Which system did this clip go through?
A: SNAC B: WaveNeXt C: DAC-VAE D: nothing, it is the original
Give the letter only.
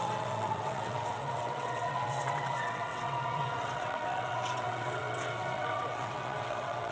B